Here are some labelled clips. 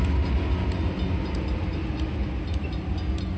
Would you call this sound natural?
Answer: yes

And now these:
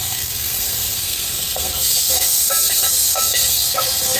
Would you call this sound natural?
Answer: no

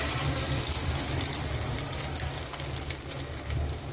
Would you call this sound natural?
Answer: yes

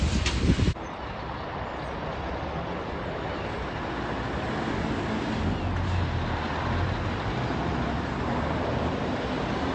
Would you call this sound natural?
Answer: yes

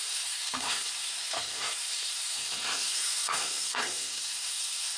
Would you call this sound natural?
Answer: no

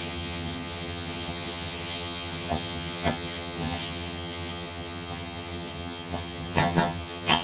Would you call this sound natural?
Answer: no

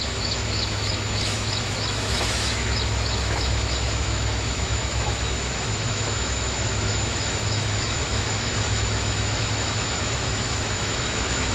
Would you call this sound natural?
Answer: no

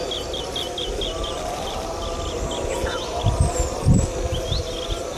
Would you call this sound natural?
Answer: yes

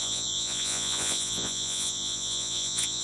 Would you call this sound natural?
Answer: no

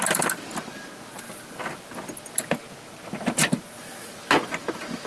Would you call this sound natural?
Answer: yes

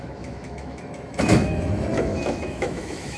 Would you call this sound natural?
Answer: no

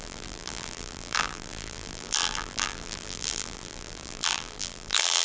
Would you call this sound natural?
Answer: no